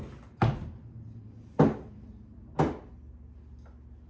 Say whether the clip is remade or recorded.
recorded